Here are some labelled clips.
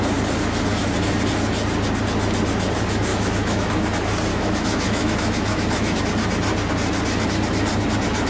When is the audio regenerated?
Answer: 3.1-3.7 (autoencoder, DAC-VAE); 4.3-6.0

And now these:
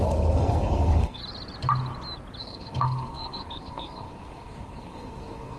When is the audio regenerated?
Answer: 0.0-1.2 (codec, SNAC); 2.4-5.6

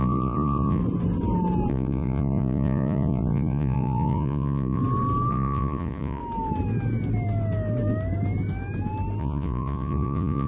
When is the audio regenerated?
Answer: 0.0-0.8 (vocoder, Vocos); 1.7-4.8; 5.3-6.2; 9.2-10.5

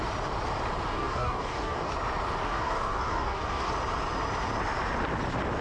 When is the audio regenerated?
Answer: 0.9-1.9 (codec, DAC); 2.4-3.7

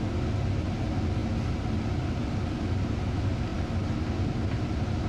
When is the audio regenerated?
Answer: none

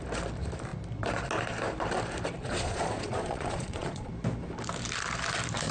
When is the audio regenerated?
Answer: 2.4-4.1 (vocoder, Vocos)